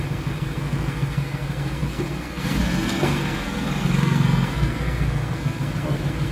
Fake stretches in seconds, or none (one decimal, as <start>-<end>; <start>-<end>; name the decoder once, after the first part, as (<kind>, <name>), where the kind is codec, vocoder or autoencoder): 0.0-6.3 (codec, SNAC)